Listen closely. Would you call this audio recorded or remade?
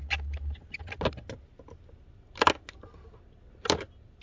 recorded